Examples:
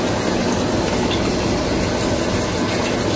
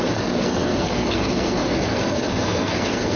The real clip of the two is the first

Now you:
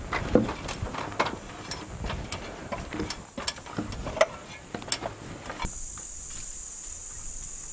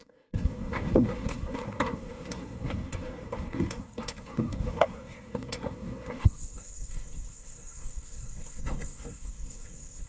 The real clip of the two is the first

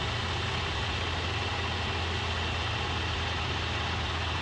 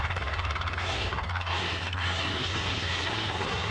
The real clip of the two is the first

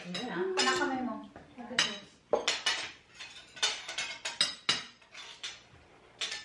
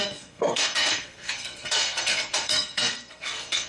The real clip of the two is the first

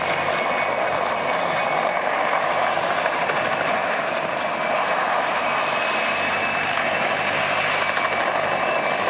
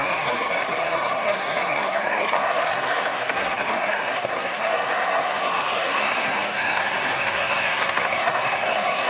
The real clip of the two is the first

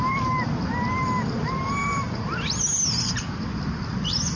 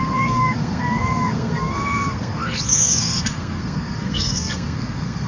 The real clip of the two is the first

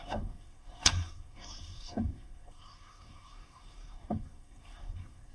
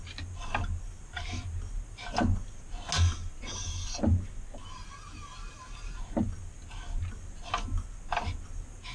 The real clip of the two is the second